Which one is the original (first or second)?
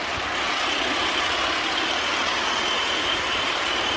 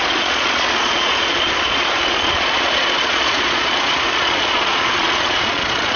first